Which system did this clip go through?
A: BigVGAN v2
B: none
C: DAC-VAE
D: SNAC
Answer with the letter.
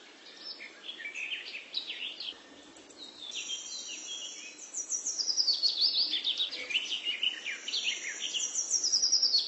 B